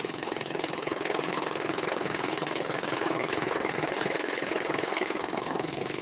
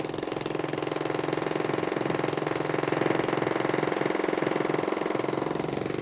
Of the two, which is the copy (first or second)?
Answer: first